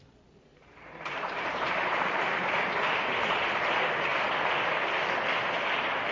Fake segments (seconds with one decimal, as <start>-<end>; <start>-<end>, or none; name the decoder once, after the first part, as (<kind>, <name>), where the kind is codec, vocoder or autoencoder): 0.5-2.7 (vocoder, BigVGAN v2)